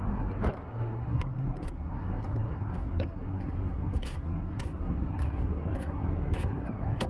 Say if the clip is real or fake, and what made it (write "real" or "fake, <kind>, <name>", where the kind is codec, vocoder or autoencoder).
fake, codec, SNAC